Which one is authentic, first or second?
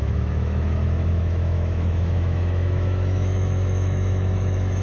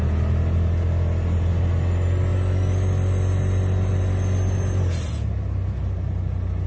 second